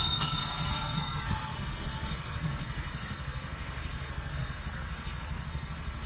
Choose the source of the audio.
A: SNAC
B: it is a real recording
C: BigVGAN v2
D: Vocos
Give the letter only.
A